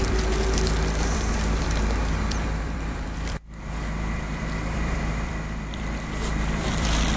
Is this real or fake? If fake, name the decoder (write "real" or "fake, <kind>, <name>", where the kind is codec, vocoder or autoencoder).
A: fake, vocoder, BigVGAN v2